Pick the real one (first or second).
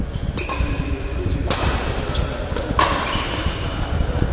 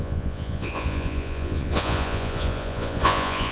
first